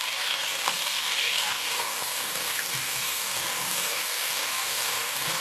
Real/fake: fake